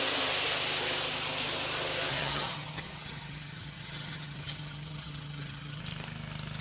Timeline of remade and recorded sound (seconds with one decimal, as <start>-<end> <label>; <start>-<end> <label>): 0.0-2.1 recorded; 2.1-5.8 remade; 5.8-6.6 recorded